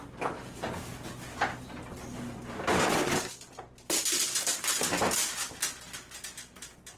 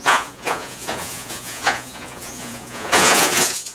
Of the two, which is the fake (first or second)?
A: second